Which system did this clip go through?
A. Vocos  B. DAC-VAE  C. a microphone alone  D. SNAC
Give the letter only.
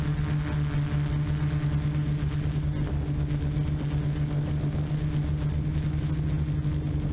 C